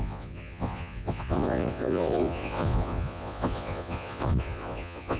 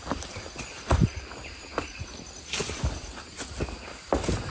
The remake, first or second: first